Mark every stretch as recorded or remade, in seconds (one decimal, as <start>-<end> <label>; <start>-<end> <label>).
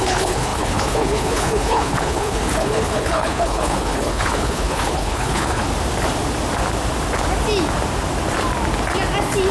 0.0-5.7 remade; 5.7-9.5 recorded